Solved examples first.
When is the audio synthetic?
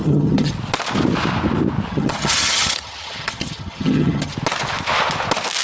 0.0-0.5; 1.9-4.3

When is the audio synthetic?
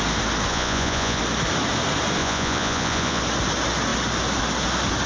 0.5-1.2; 2.2-3.2